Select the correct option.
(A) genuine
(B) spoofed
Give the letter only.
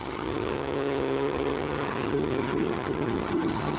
B